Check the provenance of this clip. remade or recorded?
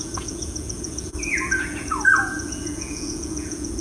remade